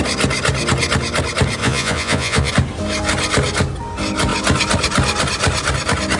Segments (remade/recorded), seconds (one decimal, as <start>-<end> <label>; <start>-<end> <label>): 0.0-1.6 recorded; 1.6-2.5 remade; 2.5-6.2 recorded